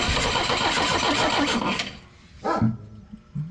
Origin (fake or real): real